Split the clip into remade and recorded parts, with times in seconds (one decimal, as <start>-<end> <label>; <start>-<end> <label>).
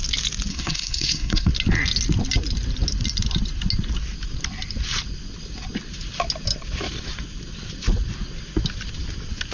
0.0-0.5 recorded; 0.5-1.5 remade; 1.5-9.5 recorded